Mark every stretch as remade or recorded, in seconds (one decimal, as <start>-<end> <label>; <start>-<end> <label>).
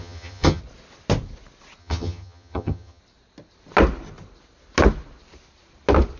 0.0-0.6 remade; 0.6-1.8 recorded; 1.8-3.0 remade; 3.0-6.2 recorded